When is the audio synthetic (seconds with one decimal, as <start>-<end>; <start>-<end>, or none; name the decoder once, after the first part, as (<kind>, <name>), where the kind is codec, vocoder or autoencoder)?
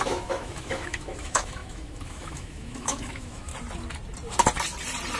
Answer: 0.0-3.5 (autoencoder, DAC-VAE)